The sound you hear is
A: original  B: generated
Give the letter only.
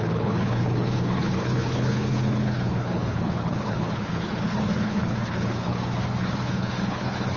B